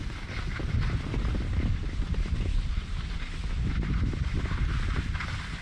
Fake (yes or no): no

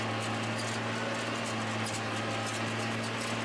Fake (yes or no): no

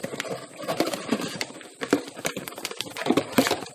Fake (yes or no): yes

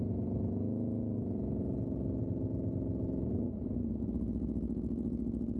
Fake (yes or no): no